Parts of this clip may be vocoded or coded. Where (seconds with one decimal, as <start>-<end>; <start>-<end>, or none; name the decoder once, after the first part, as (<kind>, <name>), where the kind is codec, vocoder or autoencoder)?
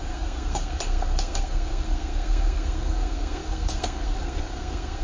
0.0-5.0 (codec, SNAC)